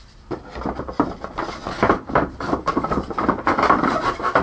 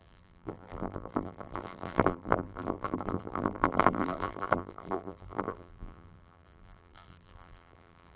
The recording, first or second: first